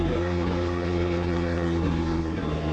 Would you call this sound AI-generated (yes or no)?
yes